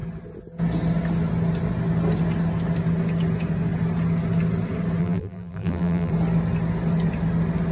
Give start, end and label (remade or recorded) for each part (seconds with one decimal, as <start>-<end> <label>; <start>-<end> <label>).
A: 0.0-5.0 recorded; 5.0-6.1 remade; 6.1-7.7 recorded